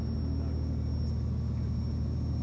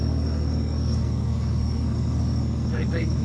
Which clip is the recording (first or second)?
first